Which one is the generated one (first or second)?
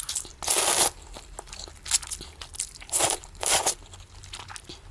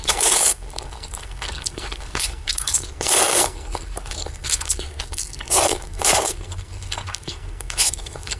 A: second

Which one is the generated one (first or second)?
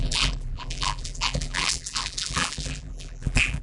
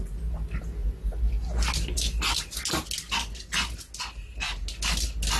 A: first